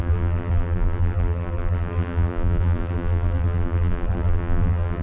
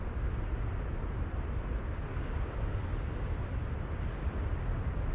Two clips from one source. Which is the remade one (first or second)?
first